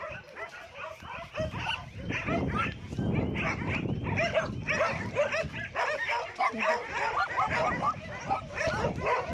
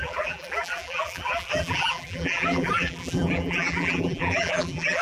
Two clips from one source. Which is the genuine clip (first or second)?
first